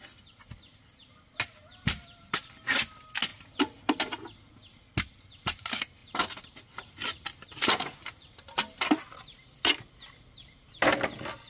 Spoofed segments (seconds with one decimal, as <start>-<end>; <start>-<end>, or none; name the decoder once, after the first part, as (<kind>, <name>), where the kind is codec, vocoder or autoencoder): none